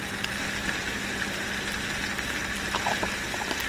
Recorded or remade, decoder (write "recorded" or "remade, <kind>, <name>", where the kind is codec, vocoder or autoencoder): recorded